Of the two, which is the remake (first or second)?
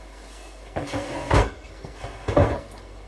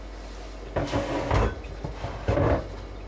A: first